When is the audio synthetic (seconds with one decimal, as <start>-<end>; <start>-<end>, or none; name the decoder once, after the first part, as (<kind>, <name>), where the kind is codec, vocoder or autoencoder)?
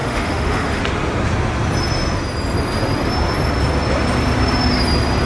0.0-0.8 (autoencoder, DAC-VAE)